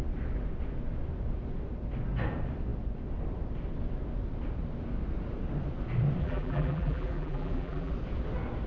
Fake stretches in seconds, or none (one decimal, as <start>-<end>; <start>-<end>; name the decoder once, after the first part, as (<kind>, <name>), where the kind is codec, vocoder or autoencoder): 6.2-7.9 (vocoder, BigVGAN v2)